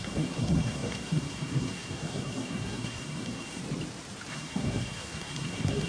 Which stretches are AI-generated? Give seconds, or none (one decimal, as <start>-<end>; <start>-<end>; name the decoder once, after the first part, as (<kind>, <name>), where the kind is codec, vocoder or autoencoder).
0.0-3.6 (codec, SNAC); 4.3-5.9